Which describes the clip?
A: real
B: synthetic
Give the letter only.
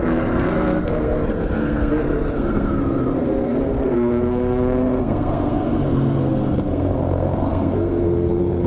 B